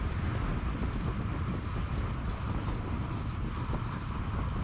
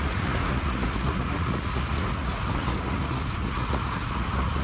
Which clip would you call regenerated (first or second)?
second